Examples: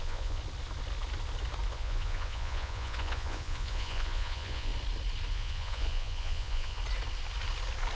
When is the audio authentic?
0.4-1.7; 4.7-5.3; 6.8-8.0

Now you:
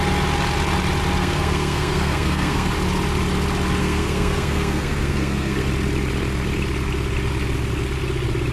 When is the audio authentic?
0.0-1.2; 2.7-3.8; 5.7-8.5